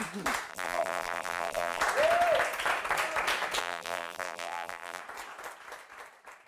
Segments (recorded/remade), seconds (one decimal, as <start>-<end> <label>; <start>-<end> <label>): 0.0-0.5 recorded; 0.5-1.8 remade; 1.8-3.6 recorded; 3.6-5.0 remade; 5.0-6.5 recorded